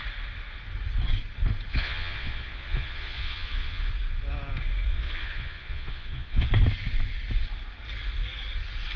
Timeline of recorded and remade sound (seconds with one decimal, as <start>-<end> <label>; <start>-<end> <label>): 0.0-1.7 recorded; 1.7-3.9 remade; 3.9-4.9 recorded; 4.9-6.5 remade; 6.5-9.0 recorded